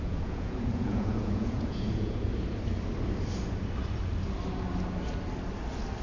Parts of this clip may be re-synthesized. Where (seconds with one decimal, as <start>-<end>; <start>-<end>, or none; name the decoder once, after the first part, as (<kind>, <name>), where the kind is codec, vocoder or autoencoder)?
0.0-2.3 (vocoder, Vocos)